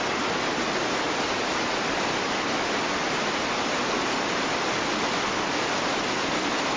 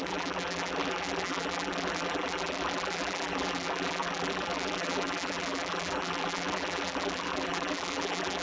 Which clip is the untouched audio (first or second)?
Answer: first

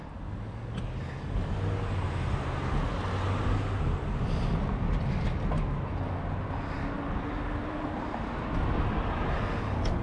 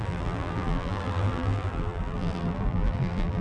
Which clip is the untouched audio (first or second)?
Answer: first